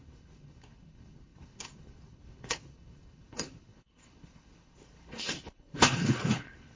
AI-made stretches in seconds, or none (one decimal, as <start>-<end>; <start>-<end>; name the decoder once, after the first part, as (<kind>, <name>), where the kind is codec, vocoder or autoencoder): 0.0-6.8 (codec, HILCodec)